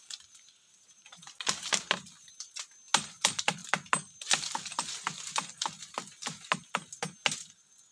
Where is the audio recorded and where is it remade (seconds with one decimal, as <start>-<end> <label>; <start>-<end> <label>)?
0.0-7.9 recorded